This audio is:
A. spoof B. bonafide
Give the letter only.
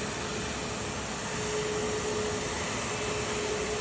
B